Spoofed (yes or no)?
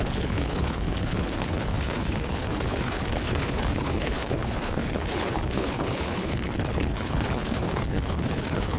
yes